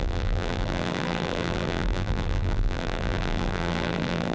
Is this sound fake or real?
fake